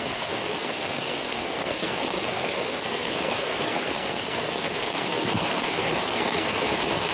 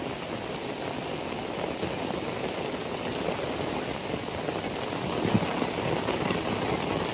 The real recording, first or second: second